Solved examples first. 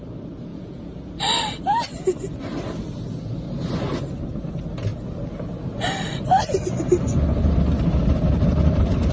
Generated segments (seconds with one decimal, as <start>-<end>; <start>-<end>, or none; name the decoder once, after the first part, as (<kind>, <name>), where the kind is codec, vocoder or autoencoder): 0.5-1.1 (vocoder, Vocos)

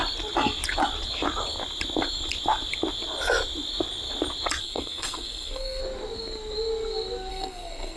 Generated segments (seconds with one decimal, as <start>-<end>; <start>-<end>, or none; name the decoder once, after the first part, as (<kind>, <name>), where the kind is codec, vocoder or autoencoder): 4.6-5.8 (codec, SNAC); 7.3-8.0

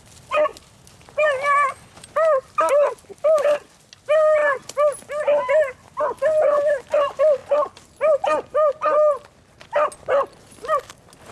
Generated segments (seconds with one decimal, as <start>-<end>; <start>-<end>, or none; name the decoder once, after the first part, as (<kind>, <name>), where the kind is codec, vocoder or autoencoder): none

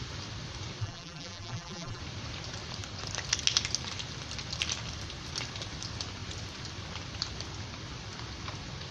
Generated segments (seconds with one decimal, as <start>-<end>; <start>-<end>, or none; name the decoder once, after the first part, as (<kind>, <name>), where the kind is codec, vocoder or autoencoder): 0.8-2.0 (vocoder, BigVGAN v2)